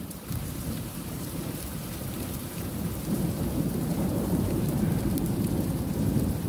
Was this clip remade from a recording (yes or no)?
yes